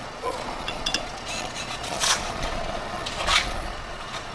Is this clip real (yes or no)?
no